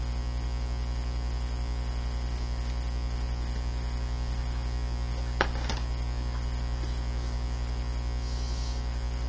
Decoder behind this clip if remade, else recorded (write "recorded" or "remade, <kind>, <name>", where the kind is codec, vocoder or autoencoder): recorded